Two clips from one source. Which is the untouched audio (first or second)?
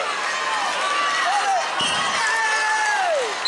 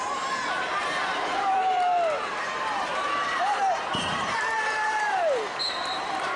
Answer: first